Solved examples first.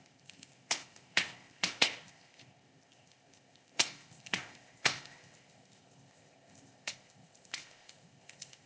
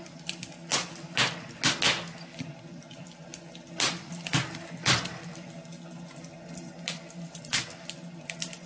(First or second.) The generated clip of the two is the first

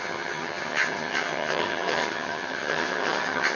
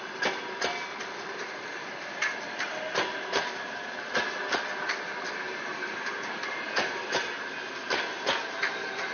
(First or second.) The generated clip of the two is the first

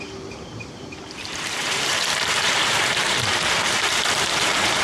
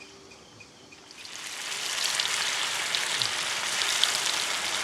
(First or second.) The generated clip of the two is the first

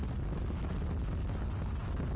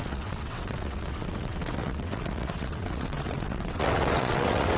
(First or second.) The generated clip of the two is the second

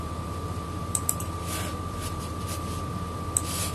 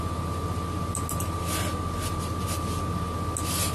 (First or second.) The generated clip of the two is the first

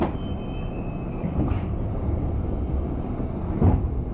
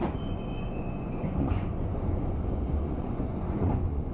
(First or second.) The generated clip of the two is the second